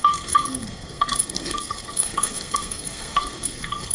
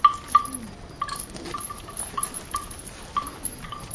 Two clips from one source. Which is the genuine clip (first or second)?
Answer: second